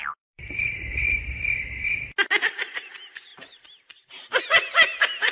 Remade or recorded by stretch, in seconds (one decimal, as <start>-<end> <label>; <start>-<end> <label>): 0.0-1.8 remade; 1.8-3.3 recorded; 3.3-4.4 remade; 4.4-5.3 recorded